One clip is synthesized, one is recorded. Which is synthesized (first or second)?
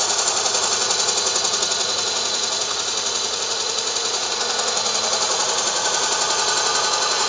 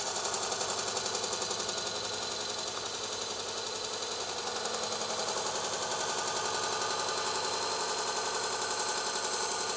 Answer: first